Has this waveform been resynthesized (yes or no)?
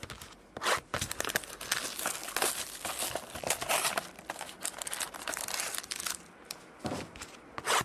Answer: no